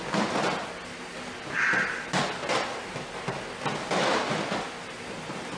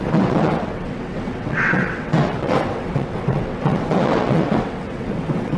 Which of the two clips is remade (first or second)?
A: second